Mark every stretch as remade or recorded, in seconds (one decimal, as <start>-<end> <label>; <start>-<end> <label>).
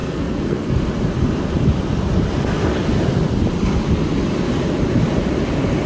0.0-0.8 remade; 0.8-5.9 recorded